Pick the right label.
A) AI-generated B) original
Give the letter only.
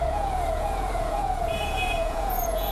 A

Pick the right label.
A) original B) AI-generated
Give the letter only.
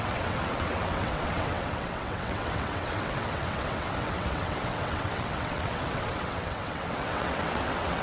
B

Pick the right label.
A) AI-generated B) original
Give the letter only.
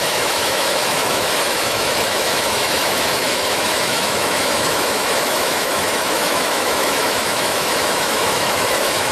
A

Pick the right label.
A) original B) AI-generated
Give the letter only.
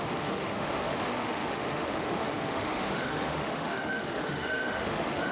B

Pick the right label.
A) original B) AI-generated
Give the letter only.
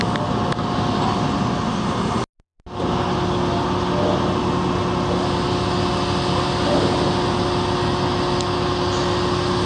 A